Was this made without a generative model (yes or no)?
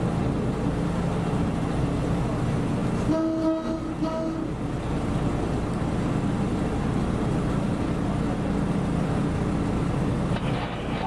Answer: yes